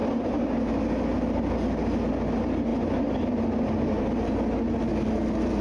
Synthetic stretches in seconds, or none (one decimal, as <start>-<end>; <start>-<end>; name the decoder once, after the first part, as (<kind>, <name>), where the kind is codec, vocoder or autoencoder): none